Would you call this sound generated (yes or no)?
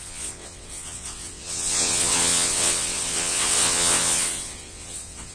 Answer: yes